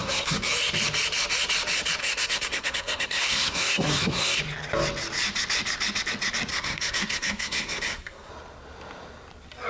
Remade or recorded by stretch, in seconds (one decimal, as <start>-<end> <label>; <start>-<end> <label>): 0.0-0.5 remade; 0.5-2.0 recorded; 2.0-4.4 remade; 4.4-6.5 recorded; 6.5-8.3 remade; 8.3-9.7 recorded